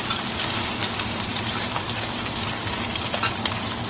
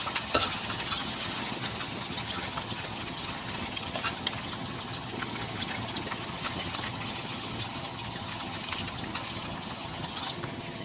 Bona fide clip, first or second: first